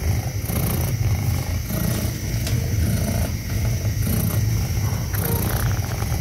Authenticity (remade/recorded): recorded